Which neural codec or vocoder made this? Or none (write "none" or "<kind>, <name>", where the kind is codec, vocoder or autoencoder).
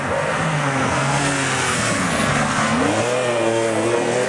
codec, SNAC